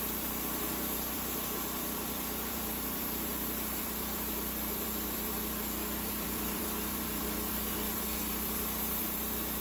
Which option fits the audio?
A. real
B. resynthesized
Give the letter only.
B